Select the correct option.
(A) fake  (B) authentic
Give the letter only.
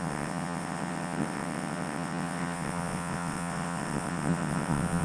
A